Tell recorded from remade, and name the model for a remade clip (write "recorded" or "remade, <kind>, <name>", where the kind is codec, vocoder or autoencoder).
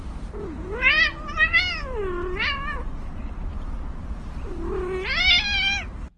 recorded